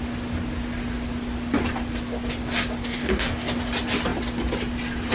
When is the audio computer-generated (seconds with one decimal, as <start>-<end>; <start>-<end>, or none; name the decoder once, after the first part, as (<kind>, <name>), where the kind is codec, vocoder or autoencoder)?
2.8-3.6 (codec, DAC)